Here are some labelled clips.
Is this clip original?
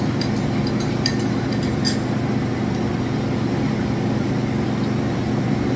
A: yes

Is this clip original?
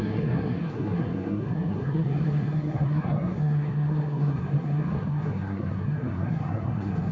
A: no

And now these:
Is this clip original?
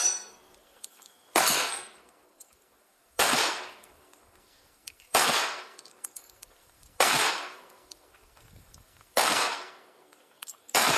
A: no